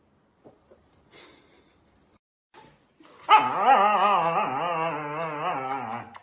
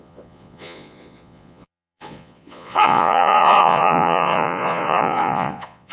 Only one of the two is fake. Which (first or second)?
second